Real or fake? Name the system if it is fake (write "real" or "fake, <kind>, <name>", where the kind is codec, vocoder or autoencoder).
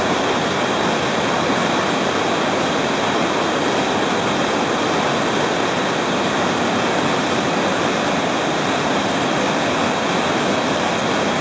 real